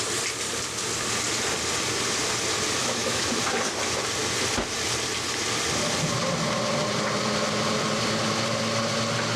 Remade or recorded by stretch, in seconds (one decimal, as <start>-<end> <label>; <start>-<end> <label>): 0.0-2.8 recorded; 2.8-3.3 remade; 3.3-9.4 recorded